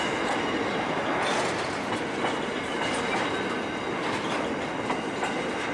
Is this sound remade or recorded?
recorded